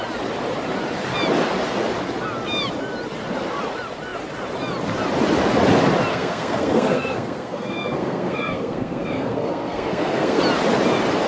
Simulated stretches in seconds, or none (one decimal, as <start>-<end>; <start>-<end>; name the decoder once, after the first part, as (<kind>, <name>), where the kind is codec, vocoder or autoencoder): 6.1-10.4 (codec, SNAC)